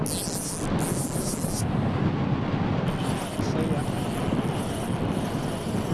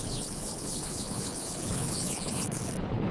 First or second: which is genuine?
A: first